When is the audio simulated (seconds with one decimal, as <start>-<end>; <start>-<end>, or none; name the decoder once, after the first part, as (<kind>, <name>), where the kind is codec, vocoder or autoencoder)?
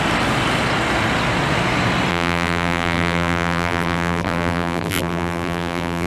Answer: 2.1-6.1 (vocoder, BigVGAN v2)